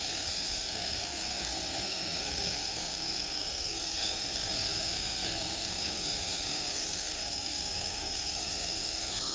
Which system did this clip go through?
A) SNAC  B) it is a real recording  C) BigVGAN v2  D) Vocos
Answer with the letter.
A